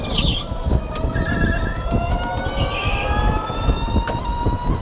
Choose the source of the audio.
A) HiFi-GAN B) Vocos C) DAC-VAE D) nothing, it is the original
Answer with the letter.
D